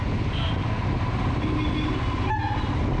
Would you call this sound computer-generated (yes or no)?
no